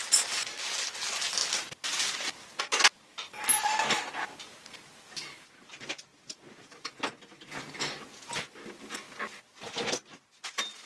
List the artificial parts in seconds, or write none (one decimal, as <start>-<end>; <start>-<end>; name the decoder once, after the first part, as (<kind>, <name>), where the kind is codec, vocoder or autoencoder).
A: none